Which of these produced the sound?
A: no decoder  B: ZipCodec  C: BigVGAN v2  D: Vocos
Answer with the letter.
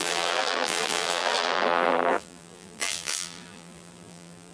C